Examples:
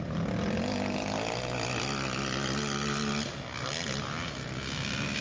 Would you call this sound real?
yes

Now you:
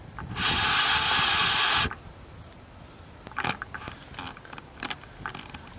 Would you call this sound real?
yes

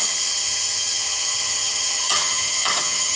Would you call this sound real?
no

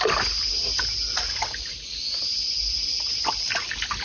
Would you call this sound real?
yes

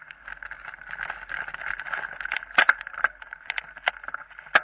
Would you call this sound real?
yes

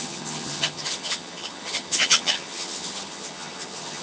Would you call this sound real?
no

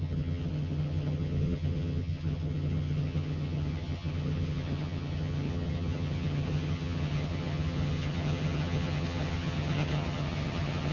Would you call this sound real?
no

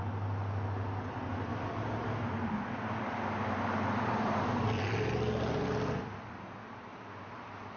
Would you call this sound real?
yes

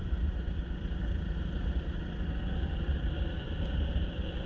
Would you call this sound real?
yes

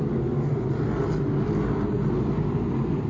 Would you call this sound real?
yes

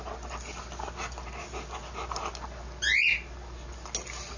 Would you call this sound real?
yes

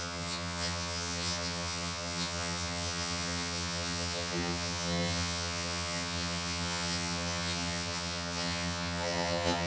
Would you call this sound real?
no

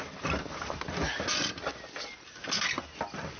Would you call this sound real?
yes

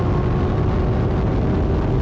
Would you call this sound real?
yes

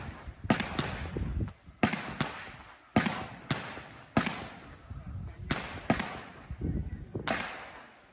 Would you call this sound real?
yes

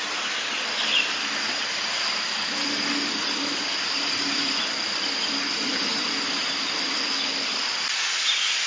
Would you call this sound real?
yes